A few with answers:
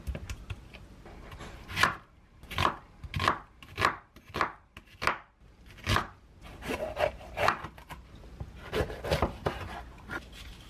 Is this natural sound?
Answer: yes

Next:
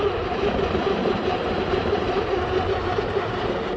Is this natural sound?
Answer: no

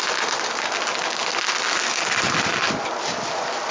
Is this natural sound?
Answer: yes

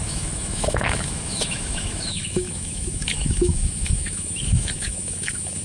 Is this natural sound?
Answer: no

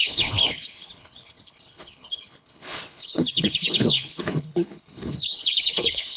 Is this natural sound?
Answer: no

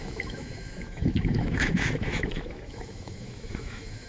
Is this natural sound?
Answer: no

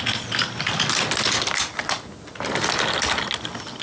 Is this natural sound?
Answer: yes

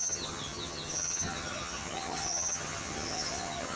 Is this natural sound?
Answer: no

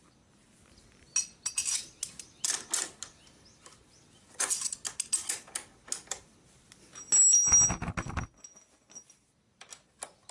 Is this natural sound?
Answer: yes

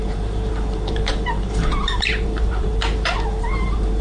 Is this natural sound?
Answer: no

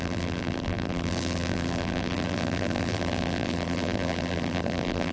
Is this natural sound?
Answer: no